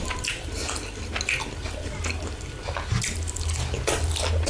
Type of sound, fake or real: real